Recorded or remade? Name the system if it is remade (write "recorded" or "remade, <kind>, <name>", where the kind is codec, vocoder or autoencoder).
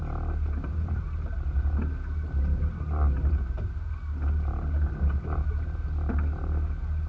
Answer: recorded